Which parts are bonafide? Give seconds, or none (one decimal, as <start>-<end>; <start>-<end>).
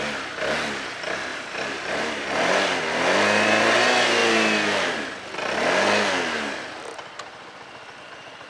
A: 0.0-1.3; 2.8-8.5